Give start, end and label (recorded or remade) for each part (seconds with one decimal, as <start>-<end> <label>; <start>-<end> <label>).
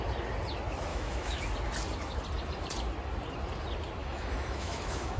0.0-0.9 recorded; 0.9-1.4 remade; 1.4-4.0 recorded; 4.0-5.2 remade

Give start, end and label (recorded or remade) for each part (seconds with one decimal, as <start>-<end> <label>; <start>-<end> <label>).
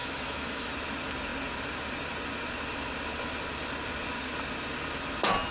0.0-0.7 remade; 0.7-5.5 recorded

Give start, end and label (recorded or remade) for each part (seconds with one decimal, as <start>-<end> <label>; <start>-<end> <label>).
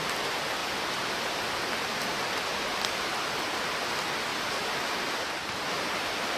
0.0-6.4 recorded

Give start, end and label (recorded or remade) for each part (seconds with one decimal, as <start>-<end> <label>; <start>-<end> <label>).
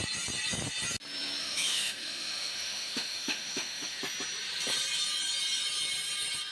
0.0-1.4 recorded; 1.4-4.0 remade; 4.0-6.5 recorded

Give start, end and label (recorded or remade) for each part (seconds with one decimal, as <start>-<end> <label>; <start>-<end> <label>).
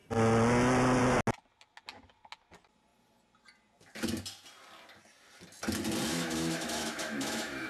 0.0-6.1 recorded; 6.1-7.7 remade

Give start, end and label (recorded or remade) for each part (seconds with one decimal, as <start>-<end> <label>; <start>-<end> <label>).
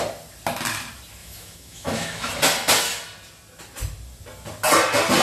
0.0-1.2 recorded; 1.2-2.3 remade; 2.3-5.2 recorded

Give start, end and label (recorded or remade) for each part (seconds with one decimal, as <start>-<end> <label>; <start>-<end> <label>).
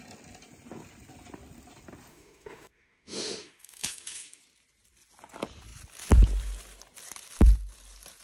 0.0-2.1 recorded; 2.1-4.4 remade; 4.4-8.2 recorded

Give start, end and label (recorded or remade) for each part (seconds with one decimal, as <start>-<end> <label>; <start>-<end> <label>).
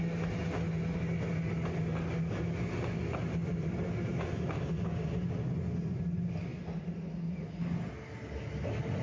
0.0-9.0 recorded